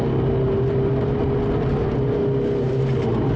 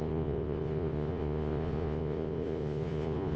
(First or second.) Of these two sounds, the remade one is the second